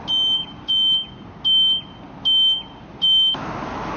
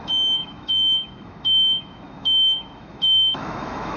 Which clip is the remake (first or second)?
second